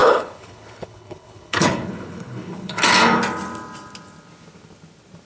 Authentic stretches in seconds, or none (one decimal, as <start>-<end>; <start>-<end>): 2.8-5.3